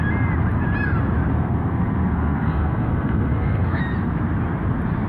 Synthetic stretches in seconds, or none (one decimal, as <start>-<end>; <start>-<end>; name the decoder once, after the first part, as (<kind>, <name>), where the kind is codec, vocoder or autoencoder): 1.3-3.8 (codec, SNAC)